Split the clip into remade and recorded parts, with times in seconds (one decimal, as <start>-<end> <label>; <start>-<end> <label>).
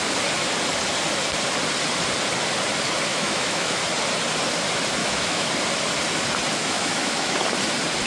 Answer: 0.0-3.1 recorded; 3.1-3.8 remade; 3.8-5.0 recorded; 5.0-5.5 remade; 5.5-6.6 recorded; 6.6-7.4 remade; 7.4-8.1 recorded